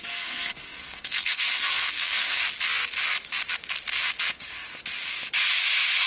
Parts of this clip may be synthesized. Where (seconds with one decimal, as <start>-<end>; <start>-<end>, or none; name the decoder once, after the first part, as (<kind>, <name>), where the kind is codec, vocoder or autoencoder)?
0.0-2.4 (codec, SNAC)